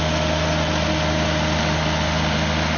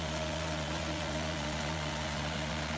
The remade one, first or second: second